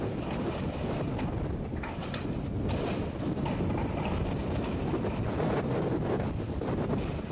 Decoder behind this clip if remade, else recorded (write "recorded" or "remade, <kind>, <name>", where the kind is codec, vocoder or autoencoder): recorded